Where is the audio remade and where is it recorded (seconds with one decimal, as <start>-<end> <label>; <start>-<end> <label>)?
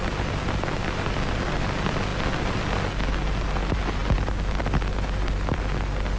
0.0-6.2 recorded